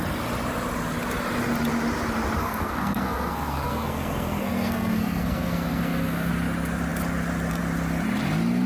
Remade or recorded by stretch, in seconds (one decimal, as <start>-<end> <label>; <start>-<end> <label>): 0.0-2.4 recorded; 2.4-6.3 remade; 6.3-8.7 recorded